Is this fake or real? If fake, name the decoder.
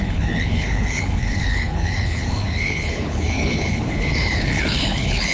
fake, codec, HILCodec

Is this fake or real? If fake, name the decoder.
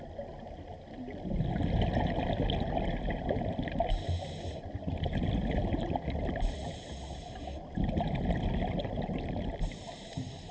real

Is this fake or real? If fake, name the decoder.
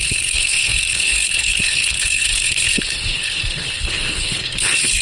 fake, codec, HILCodec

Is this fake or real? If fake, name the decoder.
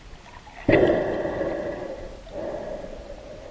real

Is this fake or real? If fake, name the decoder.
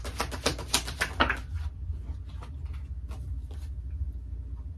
real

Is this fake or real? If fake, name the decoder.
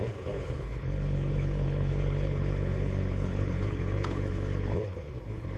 fake, codec, HILCodec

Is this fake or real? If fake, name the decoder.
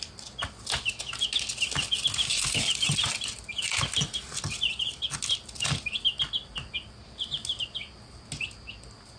real